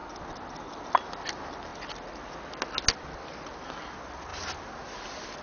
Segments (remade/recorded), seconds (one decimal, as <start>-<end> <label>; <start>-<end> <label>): 0.0-1.7 recorded; 1.7-2.3 remade; 2.3-5.4 recorded